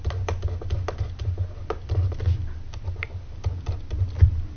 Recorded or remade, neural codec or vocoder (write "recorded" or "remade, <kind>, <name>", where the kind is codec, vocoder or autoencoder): recorded